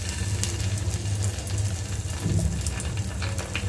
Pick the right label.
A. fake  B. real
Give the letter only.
B